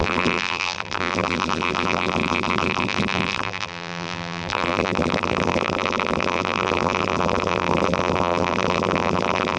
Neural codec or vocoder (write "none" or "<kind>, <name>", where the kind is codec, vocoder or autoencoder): vocoder, BigVGAN v2